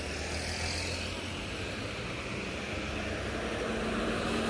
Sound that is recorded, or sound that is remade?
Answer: recorded